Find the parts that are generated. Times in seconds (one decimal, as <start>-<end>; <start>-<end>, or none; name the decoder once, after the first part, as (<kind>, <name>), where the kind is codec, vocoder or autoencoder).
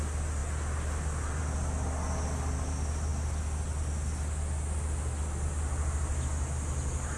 none